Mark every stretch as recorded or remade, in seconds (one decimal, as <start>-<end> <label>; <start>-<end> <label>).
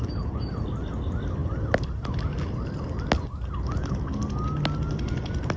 0.0-5.6 recorded